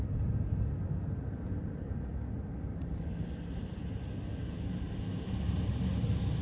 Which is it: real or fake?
real